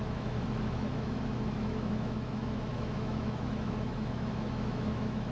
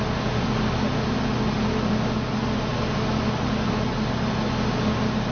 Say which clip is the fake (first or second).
first